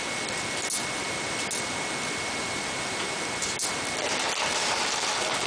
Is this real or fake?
real